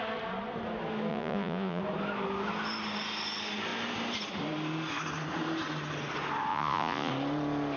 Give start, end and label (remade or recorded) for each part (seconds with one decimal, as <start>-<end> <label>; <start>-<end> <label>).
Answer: 0.0-1.1 recorded; 1.1-1.8 remade; 1.8-6.5 recorded; 6.5-7.1 remade; 7.1-7.8 recorded